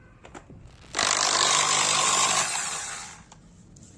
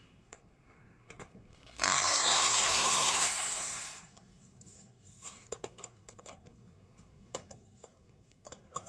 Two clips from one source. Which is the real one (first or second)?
first